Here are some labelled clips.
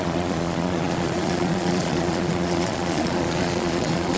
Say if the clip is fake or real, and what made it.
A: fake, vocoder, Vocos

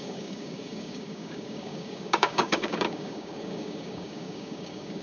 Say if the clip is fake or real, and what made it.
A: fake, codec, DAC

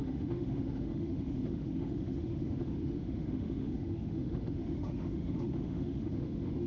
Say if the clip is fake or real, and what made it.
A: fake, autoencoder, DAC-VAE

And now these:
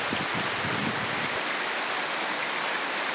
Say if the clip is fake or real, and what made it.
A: real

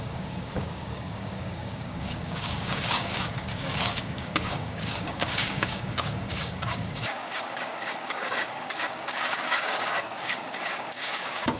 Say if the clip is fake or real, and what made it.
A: fake, codec, DAC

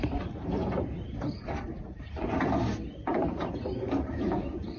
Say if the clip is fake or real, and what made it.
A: fake, vocoder, BigVGAN v2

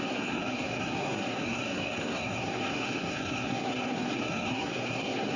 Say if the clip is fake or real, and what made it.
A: fake, codec, SNAC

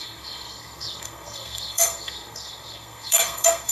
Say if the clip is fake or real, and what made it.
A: fake, codec, SNAC